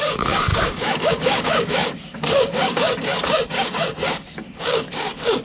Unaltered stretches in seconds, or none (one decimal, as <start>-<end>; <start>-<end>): none